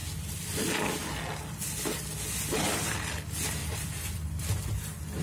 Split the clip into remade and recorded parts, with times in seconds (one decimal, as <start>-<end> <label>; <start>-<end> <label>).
0.0-3.6 recorded; 3.6-4.8 remade; 4.8-5.2 recorded